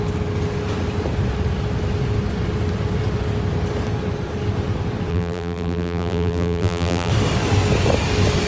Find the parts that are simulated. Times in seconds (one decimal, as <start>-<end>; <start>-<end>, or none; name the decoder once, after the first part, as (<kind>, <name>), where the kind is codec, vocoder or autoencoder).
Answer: 5.1-7.1 (vocoder, BigVGAN v2)